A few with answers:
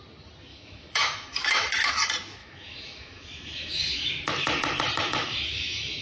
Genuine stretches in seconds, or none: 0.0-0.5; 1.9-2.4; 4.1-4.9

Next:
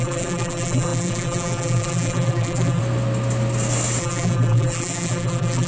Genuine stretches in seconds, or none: 2.8-4.0